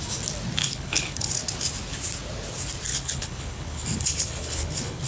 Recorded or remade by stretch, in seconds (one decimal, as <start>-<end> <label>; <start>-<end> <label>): 0.0-0.6 recorded; 0.6-1.3 remade; 1.3-2.9 recorded; 2.9-5.1 remade